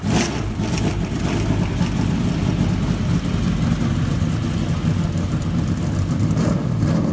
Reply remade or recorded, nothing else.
recorded